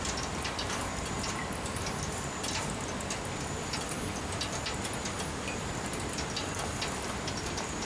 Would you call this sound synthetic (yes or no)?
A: no